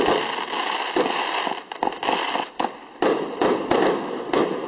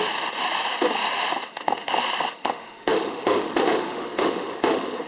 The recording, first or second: first